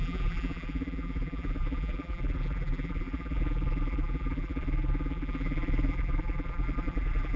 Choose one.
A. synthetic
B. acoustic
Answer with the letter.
A